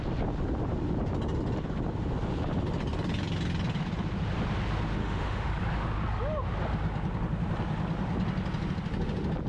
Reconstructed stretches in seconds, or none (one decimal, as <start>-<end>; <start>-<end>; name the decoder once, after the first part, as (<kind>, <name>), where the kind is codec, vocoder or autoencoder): 5.0-5.5 (autoencoder, DAC-VAE)